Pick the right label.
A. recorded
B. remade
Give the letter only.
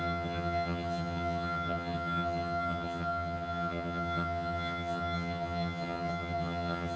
B